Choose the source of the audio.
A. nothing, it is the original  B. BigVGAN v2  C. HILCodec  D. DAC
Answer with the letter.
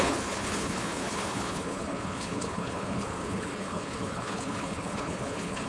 C